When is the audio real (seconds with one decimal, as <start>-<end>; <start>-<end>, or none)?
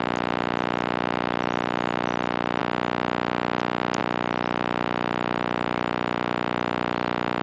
0.0-7.4